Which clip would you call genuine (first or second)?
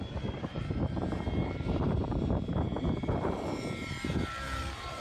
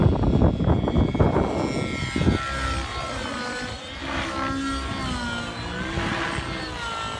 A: second